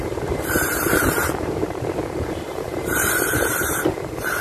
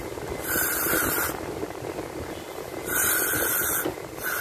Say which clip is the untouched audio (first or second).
second